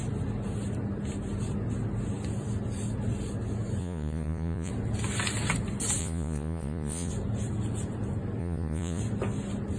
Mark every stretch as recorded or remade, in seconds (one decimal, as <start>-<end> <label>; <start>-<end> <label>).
0.0-3.8 recorded; 3.8-4.7 remade; 4.7-6.0 recorded; 6.0-7.1 remade; 7.1-8.4 recorded; 8.4-9.0 remade; 9.0-9.8 recorded